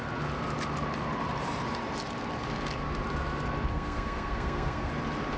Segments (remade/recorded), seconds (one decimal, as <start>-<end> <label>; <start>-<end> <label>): 0.0-3.7 recorded; 3.7-4.9 remade; 4.9-5.4 recorded